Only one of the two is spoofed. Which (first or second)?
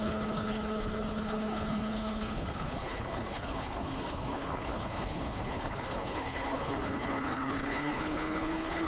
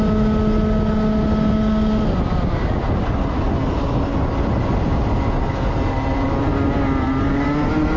first